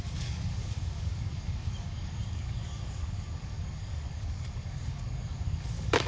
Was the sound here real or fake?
fake